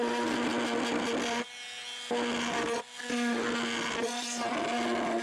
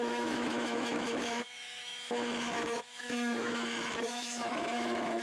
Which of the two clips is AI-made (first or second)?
second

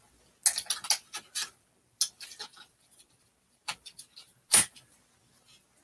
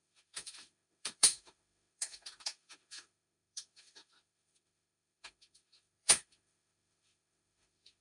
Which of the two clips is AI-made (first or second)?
second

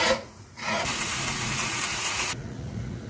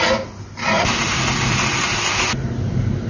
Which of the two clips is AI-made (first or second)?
first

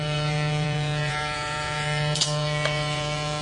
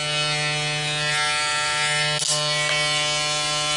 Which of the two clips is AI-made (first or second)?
first